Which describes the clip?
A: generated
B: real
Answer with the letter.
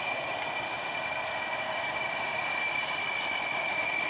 A